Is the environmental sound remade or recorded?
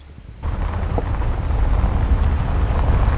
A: recorded